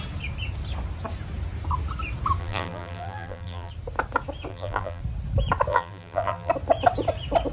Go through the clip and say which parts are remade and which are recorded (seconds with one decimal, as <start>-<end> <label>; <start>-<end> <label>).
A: 0.0-2.4 recorded; 2.4-3.7 remade; 3.7-4.5 recorded; 4.5-5.0 remade; 5.0-5.7 recorded; 5.7-6.5 remade; 6.5-7.5 recorded